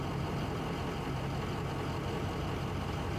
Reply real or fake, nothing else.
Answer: real